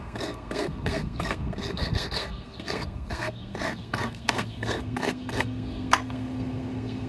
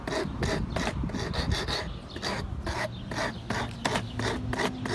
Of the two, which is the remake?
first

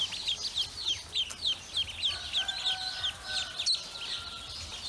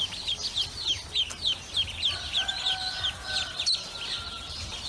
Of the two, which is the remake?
second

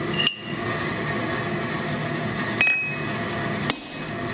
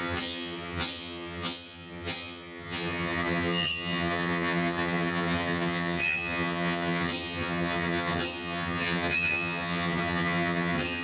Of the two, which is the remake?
second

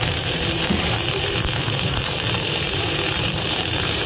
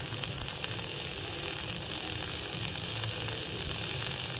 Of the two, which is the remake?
first